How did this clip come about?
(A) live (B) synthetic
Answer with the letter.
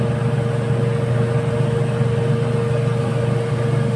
A